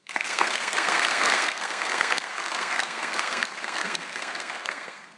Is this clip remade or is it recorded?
remade